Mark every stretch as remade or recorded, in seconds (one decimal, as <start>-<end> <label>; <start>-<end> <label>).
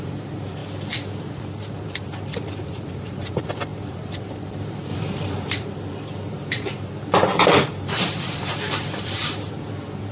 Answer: 0.0-0.6 remade; 0.6-2.5 recorded; 2.5-10.1 remade